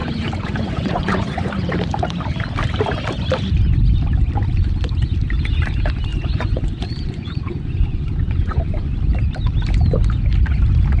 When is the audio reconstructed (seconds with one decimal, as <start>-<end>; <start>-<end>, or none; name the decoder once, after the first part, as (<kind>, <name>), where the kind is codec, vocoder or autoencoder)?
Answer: 0.0-1.5 (vocoder, Vocos); 6.1-8.9